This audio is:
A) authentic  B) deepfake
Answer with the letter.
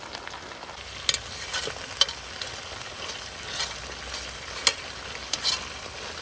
A